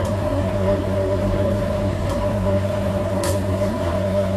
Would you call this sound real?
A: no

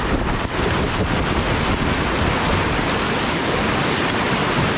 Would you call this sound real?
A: yes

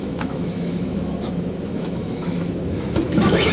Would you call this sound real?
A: no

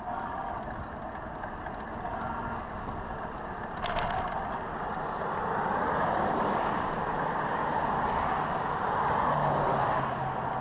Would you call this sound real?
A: yes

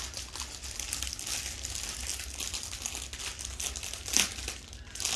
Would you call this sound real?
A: yes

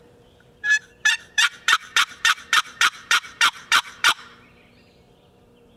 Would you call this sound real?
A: no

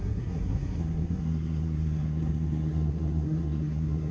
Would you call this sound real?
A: no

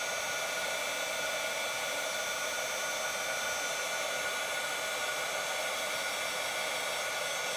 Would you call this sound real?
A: yes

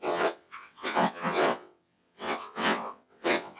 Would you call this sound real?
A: no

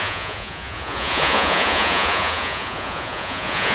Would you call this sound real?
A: no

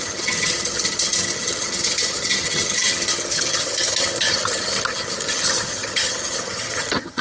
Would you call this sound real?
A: no